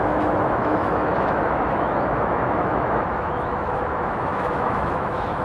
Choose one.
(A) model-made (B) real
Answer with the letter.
A